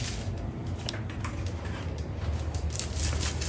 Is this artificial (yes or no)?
no